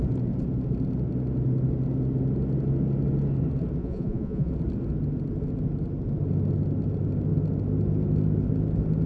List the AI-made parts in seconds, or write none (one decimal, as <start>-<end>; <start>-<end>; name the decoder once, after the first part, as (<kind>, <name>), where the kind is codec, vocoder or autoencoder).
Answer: 3.8-4.5 (vocoder, Vocos)